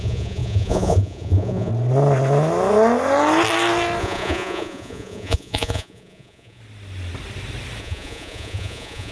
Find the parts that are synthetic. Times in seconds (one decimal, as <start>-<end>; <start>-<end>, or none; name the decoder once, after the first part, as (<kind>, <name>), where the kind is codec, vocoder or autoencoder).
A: 0.0-1.7 (vocoder, Vocos); 4.0-6.6; 7.8-9.1